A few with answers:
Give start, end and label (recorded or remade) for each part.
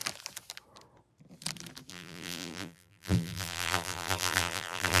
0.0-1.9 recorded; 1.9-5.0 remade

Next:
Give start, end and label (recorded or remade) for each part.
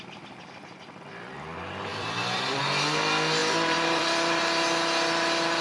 0.0-1.9 recorded; 1.9-2.6 remade; 2.6-3.4 recorded; 3.4-4.4 remade; 4.4-5.6 recorded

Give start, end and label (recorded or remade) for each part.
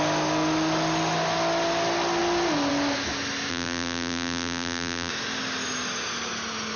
0.0-3.5 recorded; 3.5-5.1 remade; 5.1-6.8 recorded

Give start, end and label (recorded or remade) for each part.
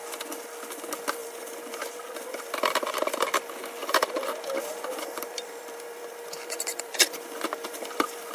0.0-1.2 recorded; 1.2-3.4 remade; 3.4-3.8 recorded; 3.8-8.3 remade